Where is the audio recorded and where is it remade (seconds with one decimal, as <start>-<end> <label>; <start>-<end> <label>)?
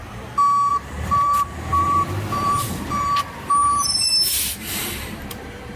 0.0-0.7 recorded; 0.7-5.8 remade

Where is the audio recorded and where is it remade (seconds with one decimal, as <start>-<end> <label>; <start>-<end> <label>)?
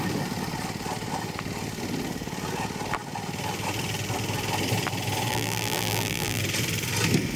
0.0-5.3 recorded; 5.3-6.4 remade; 6.4-7.4 recorded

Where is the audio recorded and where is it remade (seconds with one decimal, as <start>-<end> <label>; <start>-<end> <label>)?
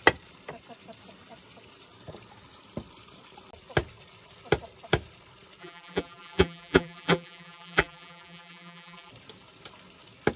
0.0-5.6 recorded; 5.6-9.1 remade; 9.1-10.4 recorded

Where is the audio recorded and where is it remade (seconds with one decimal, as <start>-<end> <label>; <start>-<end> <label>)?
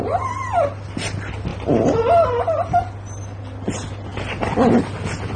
0.0-1.5 recorded; 1.5-2.4 remade; 2.4-5.4 recorded